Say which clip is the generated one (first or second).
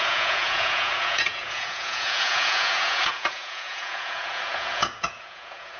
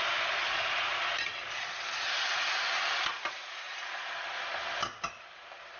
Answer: first